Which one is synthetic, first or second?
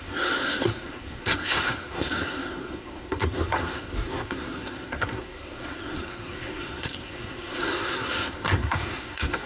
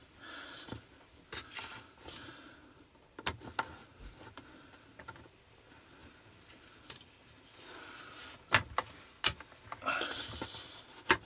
first